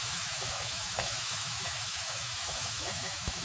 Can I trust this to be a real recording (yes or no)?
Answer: no